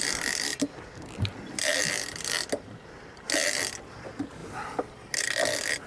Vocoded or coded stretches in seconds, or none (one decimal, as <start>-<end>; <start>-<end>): none